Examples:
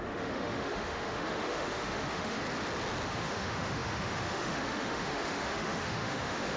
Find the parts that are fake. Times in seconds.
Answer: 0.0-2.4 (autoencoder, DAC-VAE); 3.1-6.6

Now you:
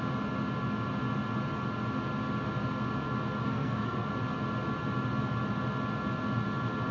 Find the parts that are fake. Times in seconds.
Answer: 3.4-4.1 (codec, SNAC)

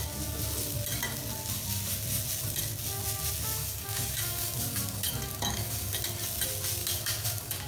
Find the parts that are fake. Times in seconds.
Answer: 3.6-6.0 (codec, DAC); 6.8-7.7

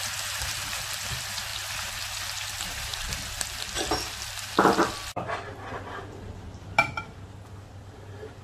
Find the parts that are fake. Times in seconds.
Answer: none

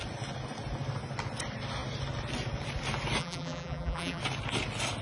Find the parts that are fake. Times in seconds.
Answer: 3.2-4.2 (vocoder, BigVGAN v2)

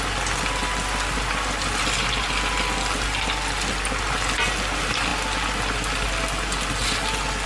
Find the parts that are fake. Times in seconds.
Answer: none

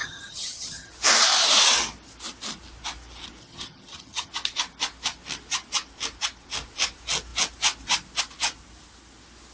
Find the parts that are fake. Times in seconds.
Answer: 0.0-0.9 (vocoder, HiFi-GAN); 3.4-4.3

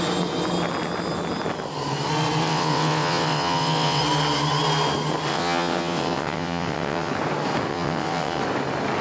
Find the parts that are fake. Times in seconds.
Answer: 2.4-4.0 (vocoder, WaveNeXt); 5.3-7.1; 7.7-8.4